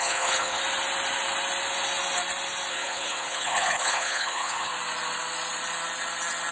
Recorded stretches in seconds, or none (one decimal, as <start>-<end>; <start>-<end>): 0.6-2.7; 4.7-6.5